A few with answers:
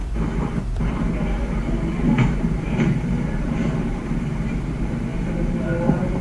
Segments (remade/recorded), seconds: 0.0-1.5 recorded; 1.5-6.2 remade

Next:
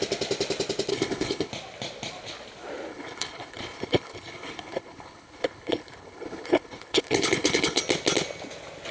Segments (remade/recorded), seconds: 0.0-0.9 recorded; 0.9-1.5 remade; 1.5-2.9 recorded; 2.9-7.8 remade; 7.8-8.9 recorded

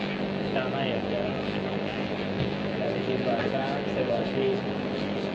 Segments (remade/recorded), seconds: 0.0-5.3 remade

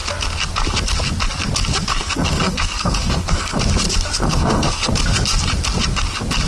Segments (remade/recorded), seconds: 0.0-1.9 recorded; 1.9-3.6 remade; 3.6-4.2 recorded; 4.2-4.9 remade; 4.9-6.5 recorded